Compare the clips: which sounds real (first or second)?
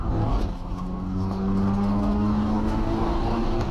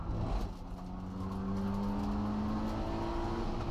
second